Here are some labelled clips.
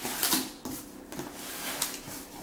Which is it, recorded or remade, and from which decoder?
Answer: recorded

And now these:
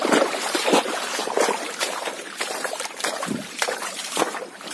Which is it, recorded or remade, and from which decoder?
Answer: remade, vocoder, BigVGAN v2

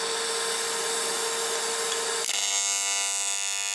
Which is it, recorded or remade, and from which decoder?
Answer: recorded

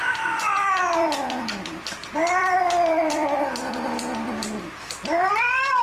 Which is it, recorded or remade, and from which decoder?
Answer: remade, vocoder, BigVGAN v2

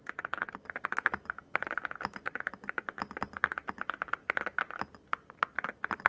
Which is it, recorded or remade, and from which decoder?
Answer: recorded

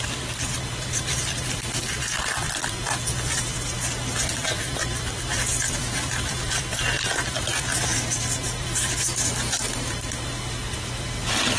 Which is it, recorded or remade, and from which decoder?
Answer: remade, vocoder, BigVGAN v2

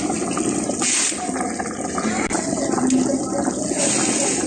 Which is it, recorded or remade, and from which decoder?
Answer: recorded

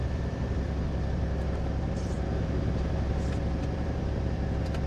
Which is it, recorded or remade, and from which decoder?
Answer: remade, vocoder, BigVGAN v2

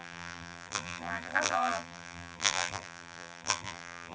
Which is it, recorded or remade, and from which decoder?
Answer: remade, vocoder, BigVGAN v2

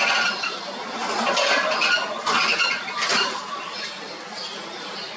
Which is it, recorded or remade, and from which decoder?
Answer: recorded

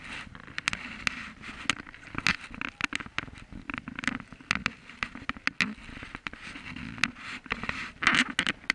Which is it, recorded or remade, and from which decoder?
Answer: recorded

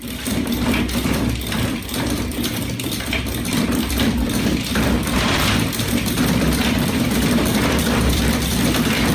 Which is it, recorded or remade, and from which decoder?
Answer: remade, vocoder, BigVGAN v2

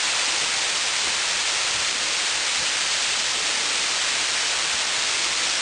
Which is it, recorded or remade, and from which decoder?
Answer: recorded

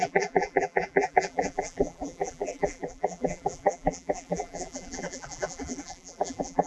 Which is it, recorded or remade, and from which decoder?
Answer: remade, vocoder, BigVGAN v2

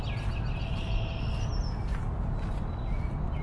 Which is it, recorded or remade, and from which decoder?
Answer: recorded